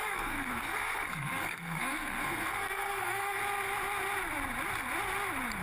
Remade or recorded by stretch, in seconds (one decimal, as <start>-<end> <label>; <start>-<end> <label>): 0.0-3.4 remade; 3.4-5.6 recorded